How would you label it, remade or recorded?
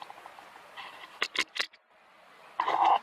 recorded